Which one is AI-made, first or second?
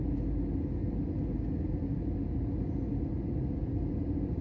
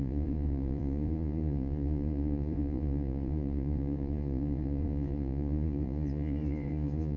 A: second